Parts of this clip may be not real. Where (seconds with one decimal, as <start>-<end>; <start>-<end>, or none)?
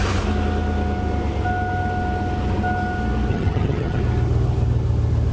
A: 3.3-4.0